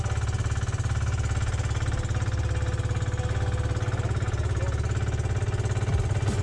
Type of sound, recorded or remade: recorded